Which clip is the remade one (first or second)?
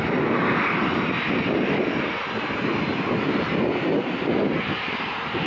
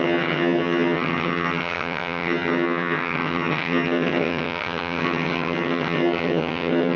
second